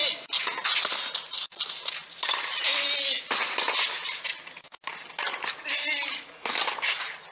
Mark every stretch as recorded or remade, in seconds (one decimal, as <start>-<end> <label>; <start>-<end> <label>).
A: 0.0-7.3 recorded